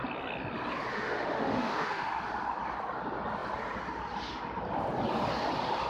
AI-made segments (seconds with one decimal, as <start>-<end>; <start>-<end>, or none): 0.9-2.1